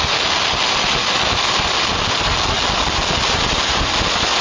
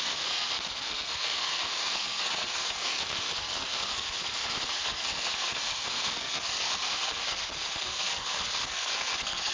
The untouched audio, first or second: first